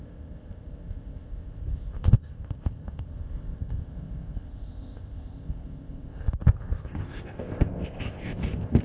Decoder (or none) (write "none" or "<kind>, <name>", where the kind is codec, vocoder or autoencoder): codec, ZipCodec